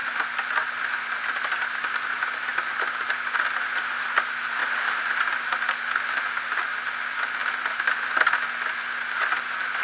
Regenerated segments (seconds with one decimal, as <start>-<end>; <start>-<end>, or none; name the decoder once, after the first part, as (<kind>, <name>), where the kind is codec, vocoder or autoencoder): none